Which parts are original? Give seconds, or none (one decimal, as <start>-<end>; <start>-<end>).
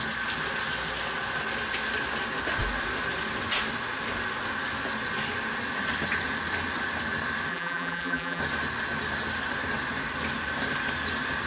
0.0-7.5; 8.4-11.5